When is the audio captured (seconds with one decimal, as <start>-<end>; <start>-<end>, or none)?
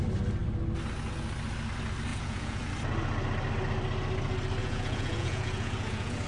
0.0-2.1; 2.7-4.6